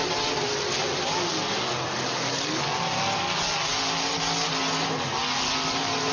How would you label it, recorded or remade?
recorded